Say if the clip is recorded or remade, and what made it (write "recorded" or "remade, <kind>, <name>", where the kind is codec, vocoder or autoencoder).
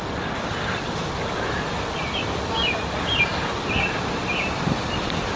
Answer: remade, vocoder, BigVGAN v2